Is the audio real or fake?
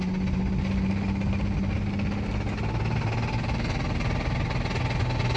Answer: real